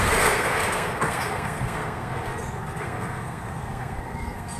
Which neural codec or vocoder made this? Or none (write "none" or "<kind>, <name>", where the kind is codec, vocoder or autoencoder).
codec, SNAC